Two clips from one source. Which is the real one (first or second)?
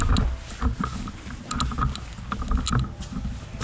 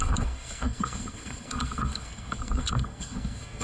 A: first